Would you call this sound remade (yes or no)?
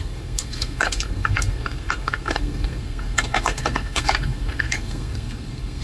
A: yes